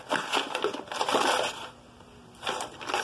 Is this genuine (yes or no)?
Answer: yes